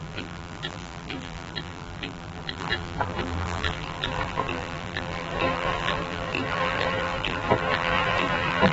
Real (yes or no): no